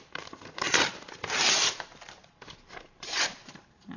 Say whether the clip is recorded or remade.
remade